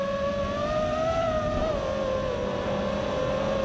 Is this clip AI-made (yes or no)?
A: no